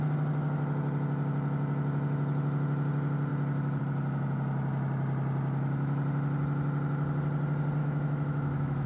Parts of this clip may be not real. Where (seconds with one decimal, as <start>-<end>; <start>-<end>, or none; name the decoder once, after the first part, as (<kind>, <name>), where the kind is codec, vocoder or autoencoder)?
7.8-8.9 (autoencoder, DAC-VAE)